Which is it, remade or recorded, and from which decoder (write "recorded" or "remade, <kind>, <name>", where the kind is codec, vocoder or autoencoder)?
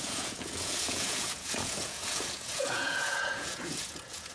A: remade, vocoder, Vocos